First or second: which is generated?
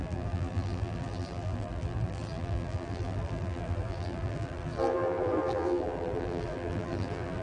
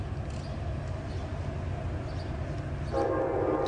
first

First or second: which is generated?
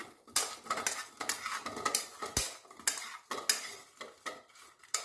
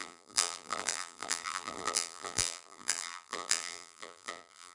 second